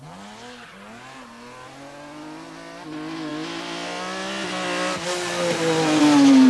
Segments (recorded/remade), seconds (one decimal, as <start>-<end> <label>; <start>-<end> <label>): 0.0-6.5 recorded